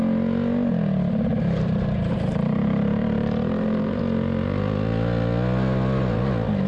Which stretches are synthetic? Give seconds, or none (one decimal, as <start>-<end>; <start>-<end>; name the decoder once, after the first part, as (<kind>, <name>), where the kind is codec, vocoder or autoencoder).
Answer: 1.3-4.0 (vocoder, BigVGAN v2)